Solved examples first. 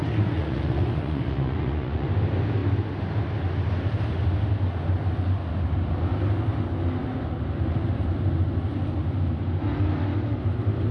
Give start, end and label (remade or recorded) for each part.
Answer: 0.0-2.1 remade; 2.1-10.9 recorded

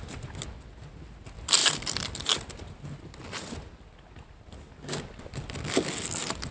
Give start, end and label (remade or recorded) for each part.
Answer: 0.0-6.5 recorded